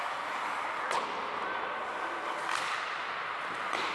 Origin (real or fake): real